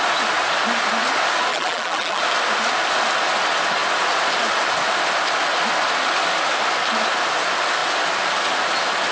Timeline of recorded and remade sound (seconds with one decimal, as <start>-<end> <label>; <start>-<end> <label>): 0.0-1.5 recorded; 1.5-2.2 remade; 2.2-9.1 recorded